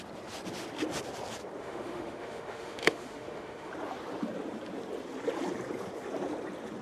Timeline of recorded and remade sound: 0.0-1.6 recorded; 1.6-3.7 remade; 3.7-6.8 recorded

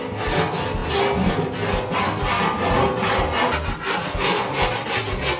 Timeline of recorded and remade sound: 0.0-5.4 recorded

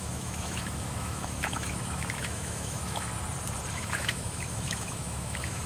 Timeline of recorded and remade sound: 0.0-3.1 remade; 3.1-3.7 recorded; 3.7-5.7 remade

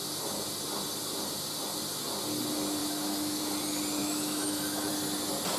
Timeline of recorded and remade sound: 0.0-2.8 recorded; 2.8-3.4 remade; 3.4-4.0 recorded; 4.0-4.9 remade; 4.9-5.6 recorded

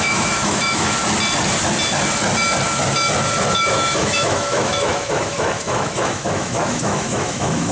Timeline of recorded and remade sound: 0.0-1.0 remade; 1.0-3.6 recorded; 3.6-7.7 remade